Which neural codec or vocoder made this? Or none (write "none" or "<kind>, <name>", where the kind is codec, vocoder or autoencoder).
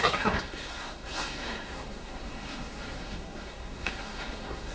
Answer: codec, SNAC